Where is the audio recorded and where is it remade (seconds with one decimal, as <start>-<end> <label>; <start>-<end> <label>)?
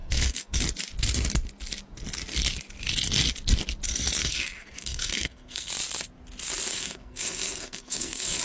0.0-0.6 remade; 0.6-4.2 recorded; 4.2-5.7 remade; 5.7-6.7 recorded; 6.7-8.4 remade